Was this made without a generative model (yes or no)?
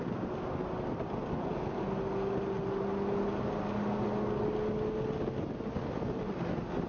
yes